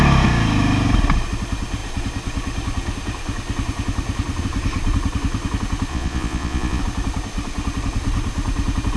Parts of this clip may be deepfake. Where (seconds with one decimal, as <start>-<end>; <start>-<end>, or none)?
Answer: 5.9-6.8